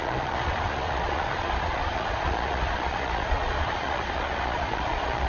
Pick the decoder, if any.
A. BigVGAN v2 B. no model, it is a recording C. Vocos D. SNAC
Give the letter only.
C